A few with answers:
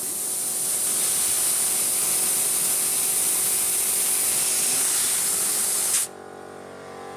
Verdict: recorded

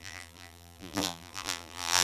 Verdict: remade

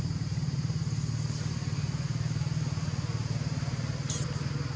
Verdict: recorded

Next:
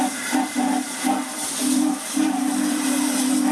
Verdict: remade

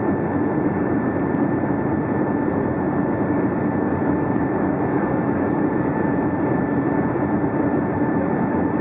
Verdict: remade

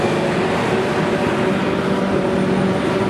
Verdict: recorded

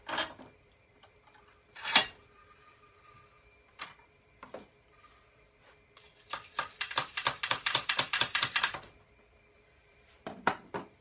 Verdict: remade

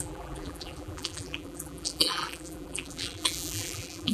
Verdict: remade